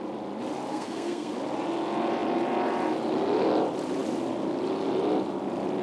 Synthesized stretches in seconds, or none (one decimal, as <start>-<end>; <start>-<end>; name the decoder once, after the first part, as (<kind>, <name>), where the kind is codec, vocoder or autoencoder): 0.7-1.3 (codec, SNAC)